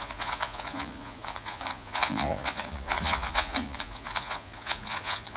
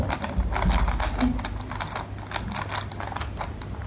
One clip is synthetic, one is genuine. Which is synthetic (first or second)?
first